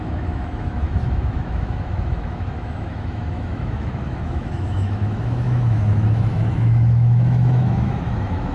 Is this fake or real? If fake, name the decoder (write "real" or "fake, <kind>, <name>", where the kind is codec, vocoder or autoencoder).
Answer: fake, autoencoder, DAC-VAE